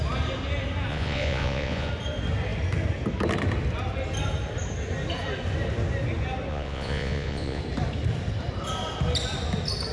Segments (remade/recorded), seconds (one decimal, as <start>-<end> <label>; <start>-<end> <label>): 0.0-0.9 recorded; 0.9-1.9 remade; 1.9-6.5 recorded; 6.5-7.6 remade; 7.6-9.9 recorded